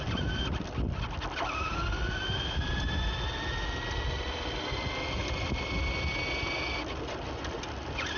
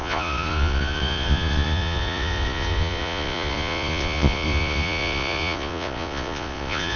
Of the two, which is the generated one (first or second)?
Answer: second